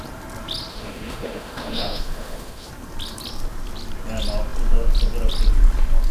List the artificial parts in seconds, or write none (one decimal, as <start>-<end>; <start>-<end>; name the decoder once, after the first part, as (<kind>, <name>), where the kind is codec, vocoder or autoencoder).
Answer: 0.7-2.7 (autoencoder, DAC-VAE)

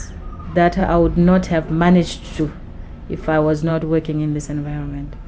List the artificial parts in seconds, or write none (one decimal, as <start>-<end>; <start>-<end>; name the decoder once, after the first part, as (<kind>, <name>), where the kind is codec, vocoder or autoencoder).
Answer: 3.7-4.4 (autoencoder, DAC-VAE)

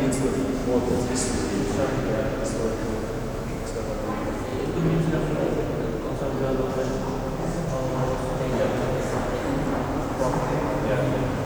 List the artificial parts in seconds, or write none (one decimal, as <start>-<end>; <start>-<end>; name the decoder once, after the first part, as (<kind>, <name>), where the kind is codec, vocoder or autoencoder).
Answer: 2.8-3.7 (autoencoder, DAC-VAE)

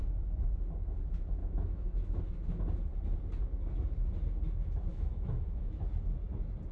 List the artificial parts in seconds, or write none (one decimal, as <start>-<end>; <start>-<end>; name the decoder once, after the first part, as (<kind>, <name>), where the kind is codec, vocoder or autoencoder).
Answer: 1.4-2.2 (autoencoder, DAC-VAE); 4.9-5.9

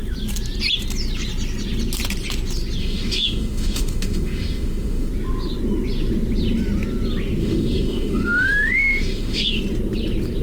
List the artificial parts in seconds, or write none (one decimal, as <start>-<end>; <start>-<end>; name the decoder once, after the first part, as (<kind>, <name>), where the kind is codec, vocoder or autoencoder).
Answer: 2.8-5.1 (autoencoder, DAC-VAE); 7.4-9.6